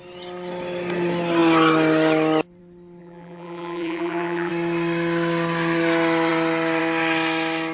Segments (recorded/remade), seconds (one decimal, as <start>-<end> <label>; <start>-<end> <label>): 0.0-3.0 recorded; 3.0-4.5 remade; 4.5-7.7 recorded

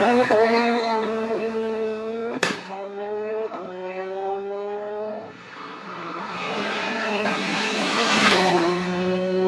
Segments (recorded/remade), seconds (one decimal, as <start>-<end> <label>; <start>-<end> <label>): 0.0-9.5 remade